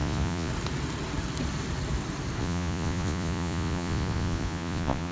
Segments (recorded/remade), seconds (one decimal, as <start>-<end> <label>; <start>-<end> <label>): 0.0-0.5 remade; 0.5-2.4 recorded; 2.4-5.1 remade